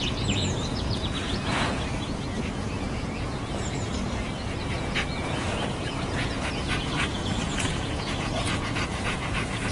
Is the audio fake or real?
fake